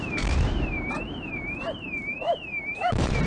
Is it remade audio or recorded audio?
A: remade